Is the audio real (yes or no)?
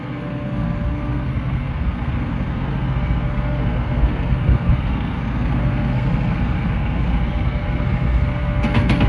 no